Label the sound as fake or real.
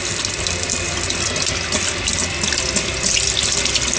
real